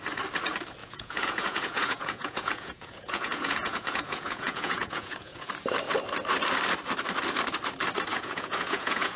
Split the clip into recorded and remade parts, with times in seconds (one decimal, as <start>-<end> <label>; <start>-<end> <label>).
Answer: 0.0-0.8 recorded; 0.8-5.5 remade; 5.5-8.1 recorded; 8.1-9.2 remade